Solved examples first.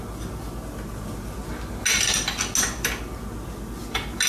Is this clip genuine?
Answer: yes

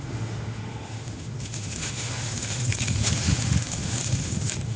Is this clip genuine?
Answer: no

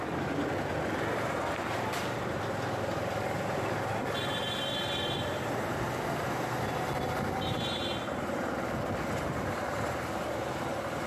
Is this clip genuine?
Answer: yes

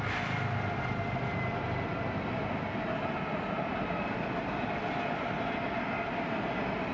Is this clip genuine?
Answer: yes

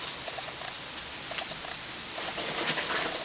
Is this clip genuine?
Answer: yes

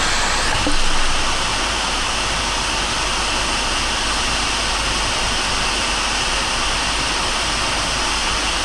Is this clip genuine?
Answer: yes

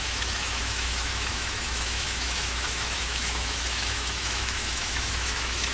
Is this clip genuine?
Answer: no